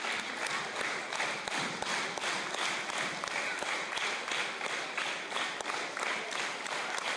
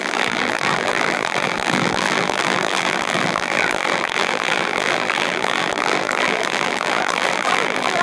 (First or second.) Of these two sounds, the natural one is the first